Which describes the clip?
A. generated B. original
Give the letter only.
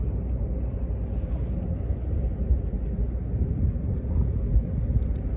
B